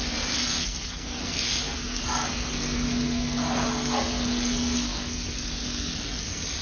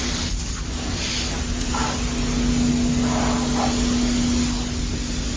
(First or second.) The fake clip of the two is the first